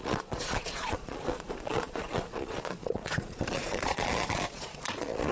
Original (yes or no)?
no